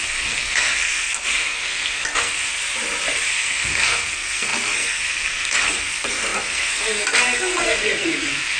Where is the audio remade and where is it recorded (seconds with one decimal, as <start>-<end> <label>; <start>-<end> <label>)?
0.0-2.6 remade; 2.6-3.3 recorded; 3.3-8.6 remade